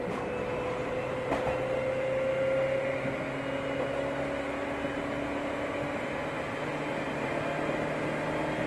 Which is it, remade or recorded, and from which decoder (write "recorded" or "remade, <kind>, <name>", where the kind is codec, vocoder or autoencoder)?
recorded